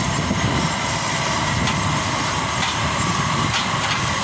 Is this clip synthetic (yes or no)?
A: no